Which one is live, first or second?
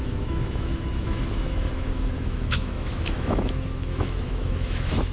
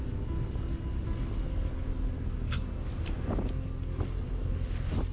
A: second